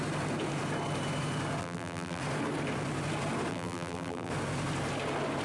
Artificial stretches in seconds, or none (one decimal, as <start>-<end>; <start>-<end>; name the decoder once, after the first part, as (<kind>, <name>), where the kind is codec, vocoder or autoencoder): 1.6-2.2 (vocoder, BigVGAN v2); 3.5-4.3